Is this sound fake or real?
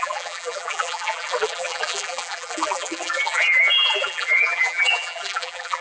fake